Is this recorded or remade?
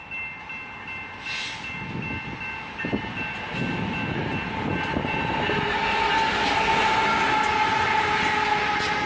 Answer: recorded